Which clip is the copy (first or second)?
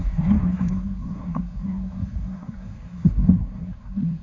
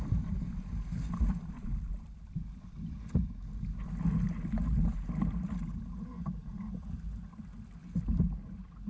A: first